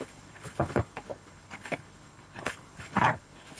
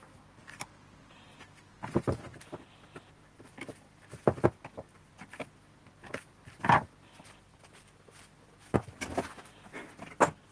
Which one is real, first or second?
second